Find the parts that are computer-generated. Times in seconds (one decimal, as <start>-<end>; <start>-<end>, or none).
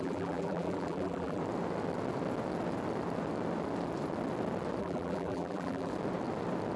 0.0-1.4; 4.8-5.9